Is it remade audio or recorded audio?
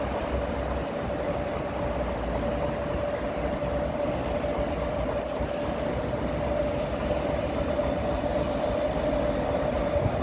recorded